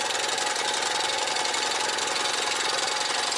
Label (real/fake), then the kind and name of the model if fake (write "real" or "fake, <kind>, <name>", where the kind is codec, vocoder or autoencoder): real